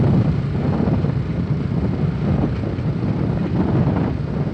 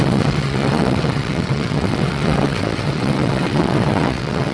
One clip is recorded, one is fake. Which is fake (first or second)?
second